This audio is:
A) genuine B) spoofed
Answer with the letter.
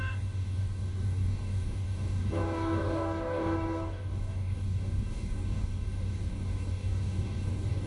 B